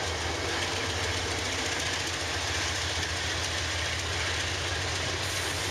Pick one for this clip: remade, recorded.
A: recorded